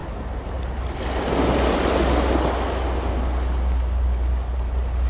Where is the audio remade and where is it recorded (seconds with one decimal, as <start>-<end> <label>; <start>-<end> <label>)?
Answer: 0.0-5.1 recorded